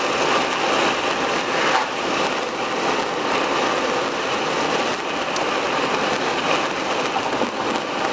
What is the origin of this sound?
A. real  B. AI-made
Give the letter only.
A